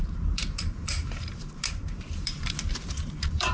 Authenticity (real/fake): fake